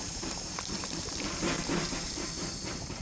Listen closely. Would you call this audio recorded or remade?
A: remade